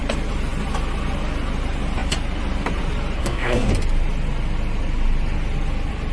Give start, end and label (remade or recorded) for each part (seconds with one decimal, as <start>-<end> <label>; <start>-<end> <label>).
0.0-3.2 recorded; 3.2-3.7 remade; 3.7-6.1 recorded